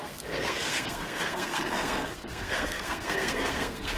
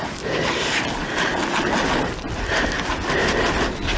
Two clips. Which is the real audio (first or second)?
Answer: second